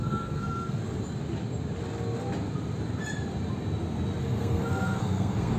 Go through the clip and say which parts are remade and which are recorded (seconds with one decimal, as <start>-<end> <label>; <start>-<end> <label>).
0.0-0.8 remade; 0.8-4.2 recorded; 4.2-5.6 remade